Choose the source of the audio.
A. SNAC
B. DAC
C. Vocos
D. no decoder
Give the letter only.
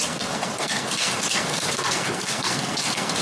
A